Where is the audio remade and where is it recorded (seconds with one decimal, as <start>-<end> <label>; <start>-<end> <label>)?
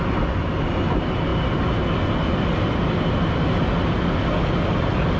0.0-5.2 recorded